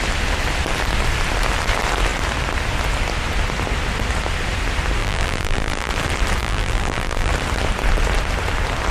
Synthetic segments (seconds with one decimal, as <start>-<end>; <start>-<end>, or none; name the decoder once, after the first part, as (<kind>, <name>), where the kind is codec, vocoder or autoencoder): 5.0-5.9 (vocoder, BigVGAN v2); 6.4-7.3